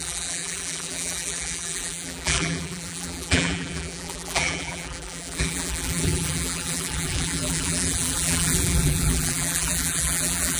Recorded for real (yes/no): no